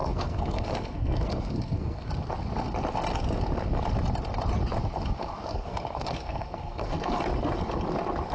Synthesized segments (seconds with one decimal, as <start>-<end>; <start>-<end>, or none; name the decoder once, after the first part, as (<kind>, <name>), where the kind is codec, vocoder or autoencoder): 0.0-2.1 (codec, SNAC); 5.5-7.2